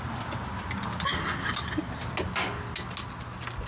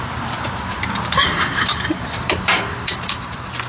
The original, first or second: first